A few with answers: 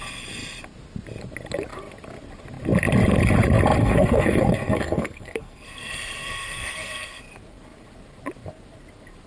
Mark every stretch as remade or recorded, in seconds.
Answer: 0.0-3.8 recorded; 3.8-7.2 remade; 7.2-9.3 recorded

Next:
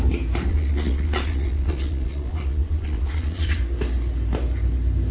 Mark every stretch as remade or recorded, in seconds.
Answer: 0.0-0.5 recorded; 0.5-3.6 remade; 3.6-5.1 recorded

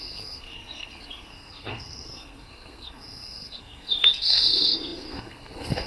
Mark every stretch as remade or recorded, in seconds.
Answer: 0.0-5.9 remade

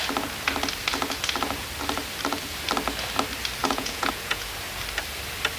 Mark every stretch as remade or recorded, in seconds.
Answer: 0.0-3.6 recorded; 3.6-4.5 remade; 4.5-5.6 recorded